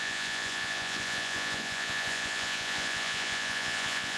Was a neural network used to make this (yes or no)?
yes